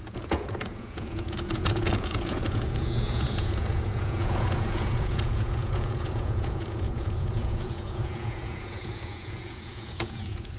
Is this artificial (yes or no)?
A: yes